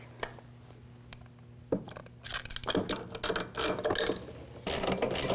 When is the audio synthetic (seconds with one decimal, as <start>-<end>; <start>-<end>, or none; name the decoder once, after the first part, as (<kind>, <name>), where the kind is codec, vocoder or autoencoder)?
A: none